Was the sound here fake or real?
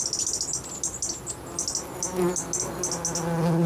real